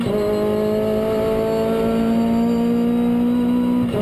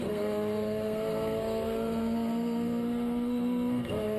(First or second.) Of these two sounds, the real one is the first